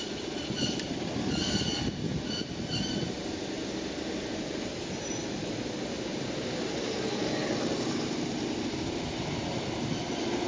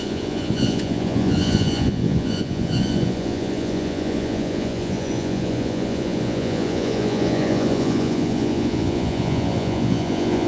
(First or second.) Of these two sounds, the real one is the first